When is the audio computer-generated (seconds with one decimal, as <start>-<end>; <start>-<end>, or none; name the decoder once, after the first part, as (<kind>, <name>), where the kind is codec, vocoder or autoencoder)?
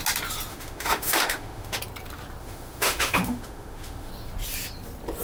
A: 0.5-1.8 (autoencoder, DAC-VAE); 2.4-4.1